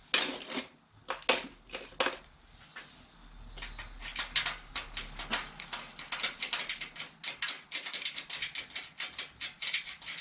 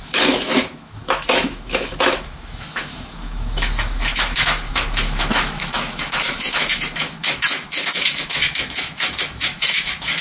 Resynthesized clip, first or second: second